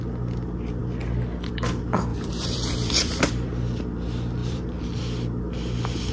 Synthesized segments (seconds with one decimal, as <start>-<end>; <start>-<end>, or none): 2.1-3.3; 4.4-5.0